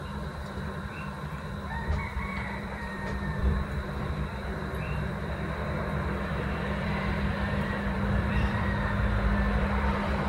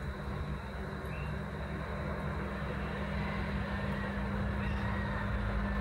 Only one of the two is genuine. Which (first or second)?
second